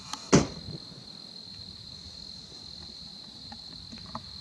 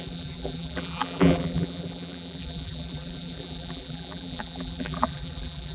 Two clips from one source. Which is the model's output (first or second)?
second